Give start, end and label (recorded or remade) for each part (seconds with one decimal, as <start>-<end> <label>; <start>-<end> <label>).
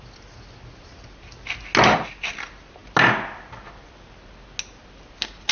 0.0-5.5 recorded